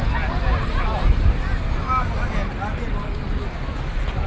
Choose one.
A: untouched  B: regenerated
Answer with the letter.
A